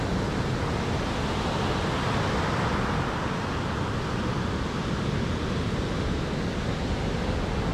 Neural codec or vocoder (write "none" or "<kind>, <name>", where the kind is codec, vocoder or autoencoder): none